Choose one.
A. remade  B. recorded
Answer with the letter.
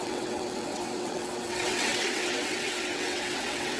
A